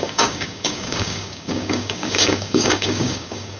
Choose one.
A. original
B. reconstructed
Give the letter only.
B